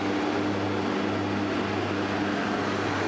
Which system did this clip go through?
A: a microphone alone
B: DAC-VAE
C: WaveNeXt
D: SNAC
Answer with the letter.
A